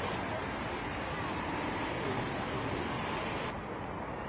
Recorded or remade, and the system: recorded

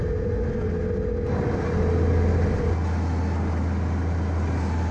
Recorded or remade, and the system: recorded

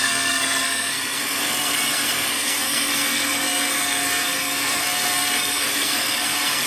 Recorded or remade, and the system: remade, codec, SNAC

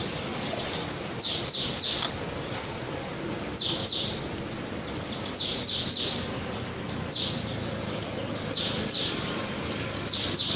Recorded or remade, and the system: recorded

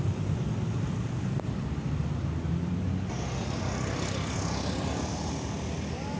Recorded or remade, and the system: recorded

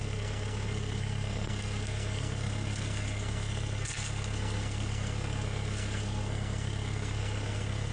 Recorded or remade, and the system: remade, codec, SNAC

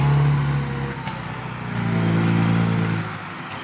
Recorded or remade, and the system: recorded